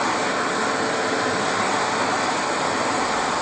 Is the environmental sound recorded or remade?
recorded